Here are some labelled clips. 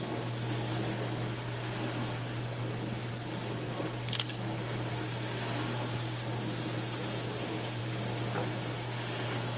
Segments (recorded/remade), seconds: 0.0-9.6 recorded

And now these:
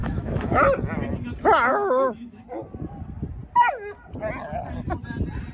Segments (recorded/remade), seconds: 0.0-0.5 remade; 0.5-1.7 recorded; 1.7-2.4 remade; 2.4-5.5 recorded